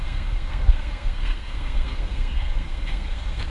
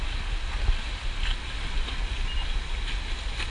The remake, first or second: first